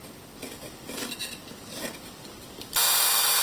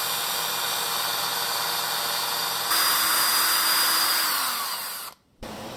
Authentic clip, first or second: first